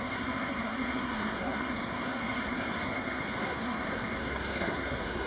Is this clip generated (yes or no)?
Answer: yes